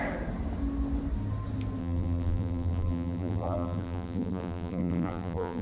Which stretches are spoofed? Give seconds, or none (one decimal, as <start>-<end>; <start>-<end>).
1.8-5.6